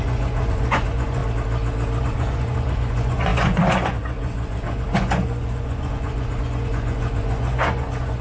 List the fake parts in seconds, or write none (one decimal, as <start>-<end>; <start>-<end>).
0.0-1.2; 2.0-8.2